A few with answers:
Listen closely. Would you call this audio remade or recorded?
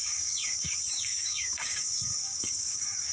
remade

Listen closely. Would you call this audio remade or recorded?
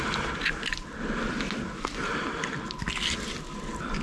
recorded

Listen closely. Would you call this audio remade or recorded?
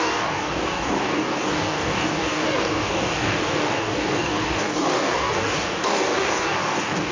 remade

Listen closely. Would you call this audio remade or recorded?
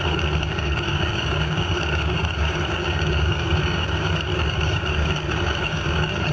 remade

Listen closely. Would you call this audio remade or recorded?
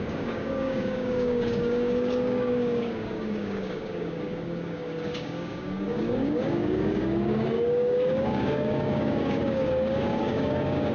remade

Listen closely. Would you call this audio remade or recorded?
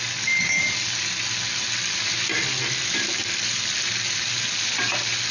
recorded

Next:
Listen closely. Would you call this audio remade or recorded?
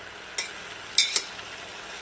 recorded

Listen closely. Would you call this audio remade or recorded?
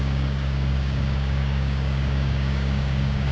remade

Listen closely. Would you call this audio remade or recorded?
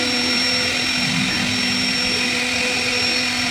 recorded